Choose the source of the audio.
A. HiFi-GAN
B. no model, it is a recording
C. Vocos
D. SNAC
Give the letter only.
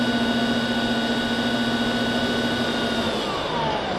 B